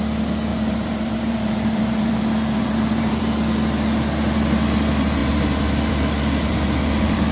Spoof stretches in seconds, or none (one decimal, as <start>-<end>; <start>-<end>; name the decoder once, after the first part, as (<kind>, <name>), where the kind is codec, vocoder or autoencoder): 0.5-3.2 (vocoder, BigVGAN v2)